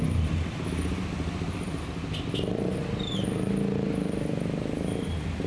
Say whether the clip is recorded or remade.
recorded